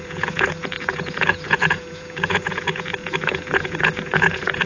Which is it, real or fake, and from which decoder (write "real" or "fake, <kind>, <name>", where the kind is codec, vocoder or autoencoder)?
fake, vocoder, Vocos